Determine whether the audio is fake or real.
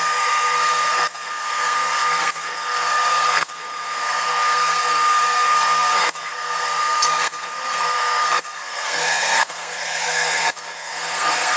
fake